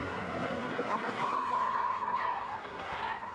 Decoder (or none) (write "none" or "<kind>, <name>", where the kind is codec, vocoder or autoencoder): codec, SNAC